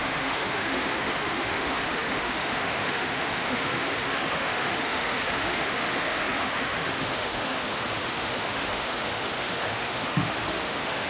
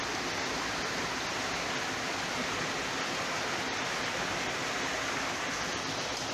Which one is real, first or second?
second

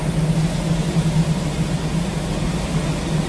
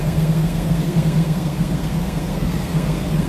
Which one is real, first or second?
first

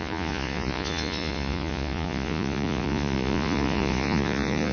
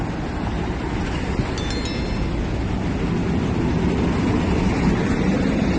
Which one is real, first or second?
second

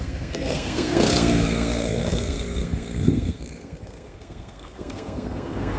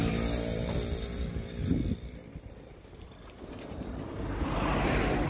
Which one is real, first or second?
second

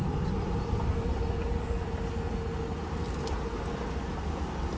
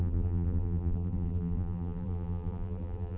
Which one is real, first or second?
first